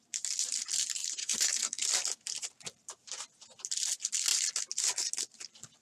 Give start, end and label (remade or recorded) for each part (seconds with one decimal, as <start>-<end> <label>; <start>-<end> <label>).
0.0-1.2 recorded; 1.2-1.8 remade; 1.8-5.8 recorded